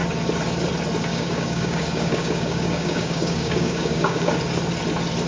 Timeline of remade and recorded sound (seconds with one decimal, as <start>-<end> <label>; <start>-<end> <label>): 0.0-1.1 recorded; 1.1-4.3 remade; 4.3-5.3 recorded